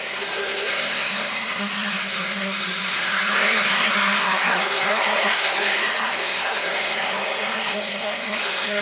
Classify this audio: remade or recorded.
remade